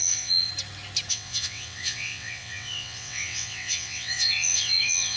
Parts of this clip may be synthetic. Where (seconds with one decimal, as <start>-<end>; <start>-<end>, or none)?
0.0-0.5; 1.1-5.2